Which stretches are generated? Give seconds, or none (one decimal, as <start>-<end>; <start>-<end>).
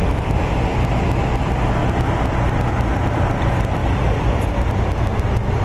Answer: 0.0-0.7; 1.4-1.8; 2.7-3.8; 4.5-5.6